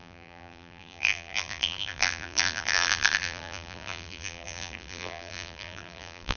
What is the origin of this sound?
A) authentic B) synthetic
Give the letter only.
B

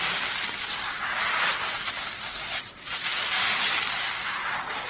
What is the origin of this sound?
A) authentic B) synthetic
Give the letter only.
A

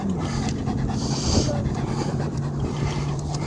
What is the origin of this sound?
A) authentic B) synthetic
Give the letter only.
B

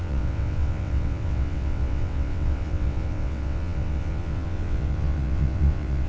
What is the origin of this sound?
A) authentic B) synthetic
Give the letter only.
B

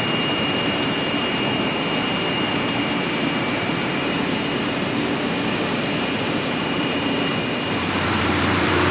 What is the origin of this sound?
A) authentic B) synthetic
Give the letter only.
B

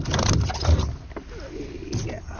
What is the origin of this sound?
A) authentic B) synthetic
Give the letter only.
A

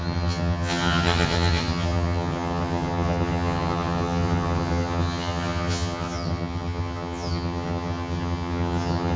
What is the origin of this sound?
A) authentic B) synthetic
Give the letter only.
B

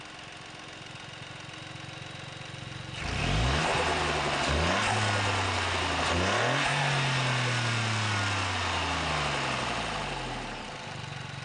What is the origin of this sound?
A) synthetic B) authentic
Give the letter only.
B